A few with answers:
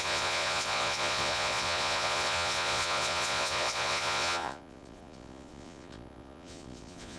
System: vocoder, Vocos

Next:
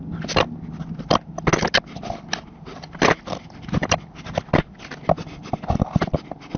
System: none